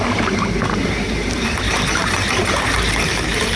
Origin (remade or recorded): remade